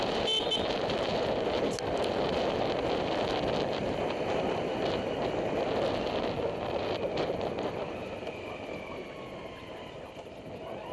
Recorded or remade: recorded